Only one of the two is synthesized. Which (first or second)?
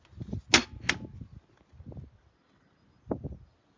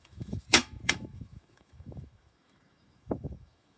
second